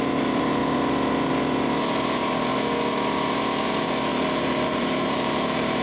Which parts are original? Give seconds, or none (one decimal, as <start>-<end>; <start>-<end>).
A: 0.6-4.1

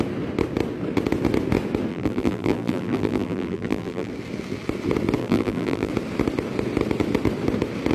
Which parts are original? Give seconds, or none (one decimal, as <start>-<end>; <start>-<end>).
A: 0.0-1.9; 4.1-5.2; 5.9-7.9

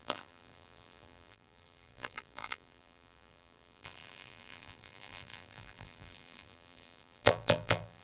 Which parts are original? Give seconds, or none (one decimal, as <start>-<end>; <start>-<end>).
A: none

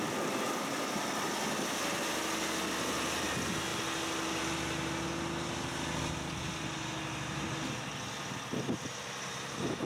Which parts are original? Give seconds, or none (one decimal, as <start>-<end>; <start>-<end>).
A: 0.0-9.9

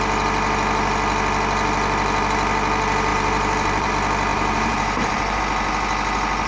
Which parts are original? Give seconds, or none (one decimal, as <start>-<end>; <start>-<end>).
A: 0.0-3.1; 3.9-4.3; 5.4-6.5

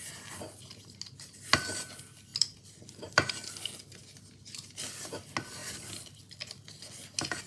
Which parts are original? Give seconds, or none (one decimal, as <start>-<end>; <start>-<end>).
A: 0.0-2.3; 3.3-5.6; 6.2-7.5

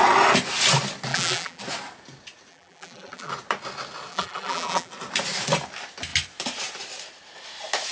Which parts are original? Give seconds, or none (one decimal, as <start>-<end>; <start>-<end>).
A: 0.0-1.1; 1.6-2.5; 3.3-4.1; 4.9-7.9

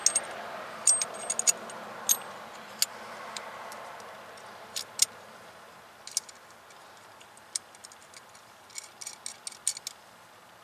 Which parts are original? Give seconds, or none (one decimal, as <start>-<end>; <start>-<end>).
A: 0.0-10.6